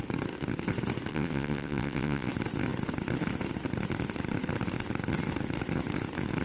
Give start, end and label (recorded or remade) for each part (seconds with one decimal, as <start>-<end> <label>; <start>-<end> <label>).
0.0-1.1 recorded; 1.1-2.3 remade; 2.3-6.4 recorded